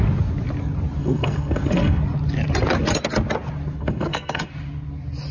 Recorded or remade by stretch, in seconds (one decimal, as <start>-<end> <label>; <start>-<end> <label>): 0.0-1.0 recorded; 1.0-2.0 remade; 2.0-3.8 recorded; 3.8-4.5 remade; 4.5-5.3 recorded